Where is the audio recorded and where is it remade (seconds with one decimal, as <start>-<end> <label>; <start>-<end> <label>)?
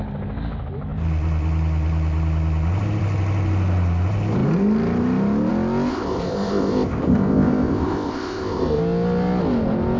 0.0-5.9 recorded; 5.9-8.8 remade; 8.8-10.0 recorded